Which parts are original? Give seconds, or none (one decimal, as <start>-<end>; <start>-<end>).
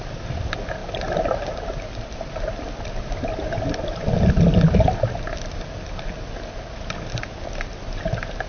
0.0-8.5